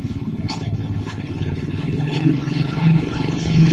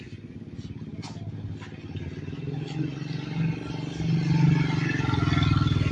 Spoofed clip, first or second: first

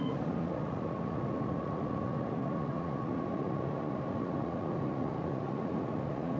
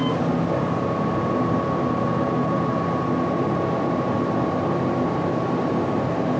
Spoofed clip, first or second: first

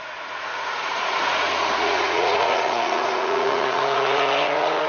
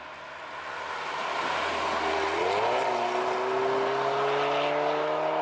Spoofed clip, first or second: first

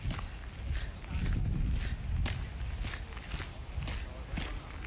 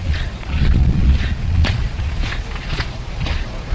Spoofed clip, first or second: second